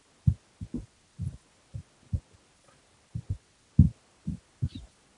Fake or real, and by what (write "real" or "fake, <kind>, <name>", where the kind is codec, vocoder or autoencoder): real